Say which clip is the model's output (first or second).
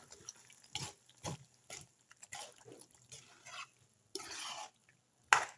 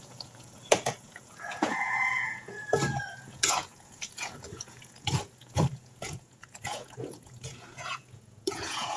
second